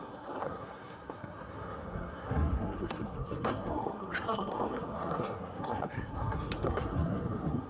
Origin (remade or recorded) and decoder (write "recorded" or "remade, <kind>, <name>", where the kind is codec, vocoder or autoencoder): remade, codec, SNAC